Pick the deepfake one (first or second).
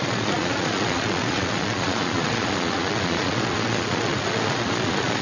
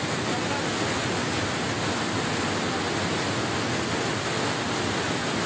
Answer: first